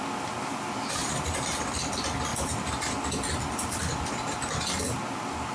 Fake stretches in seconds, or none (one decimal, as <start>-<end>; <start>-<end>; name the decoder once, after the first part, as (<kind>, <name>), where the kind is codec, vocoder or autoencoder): 1.0-1.6 (vocoder, BigVGAN v2)